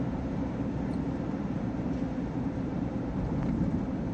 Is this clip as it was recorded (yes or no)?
no